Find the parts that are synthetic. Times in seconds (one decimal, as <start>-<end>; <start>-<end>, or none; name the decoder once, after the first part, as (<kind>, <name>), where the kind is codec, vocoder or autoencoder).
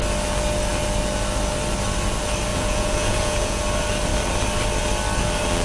2.5-3.6 (vocoder, Vocos)